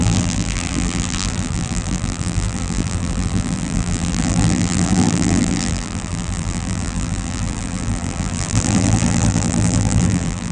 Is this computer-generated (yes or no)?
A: yes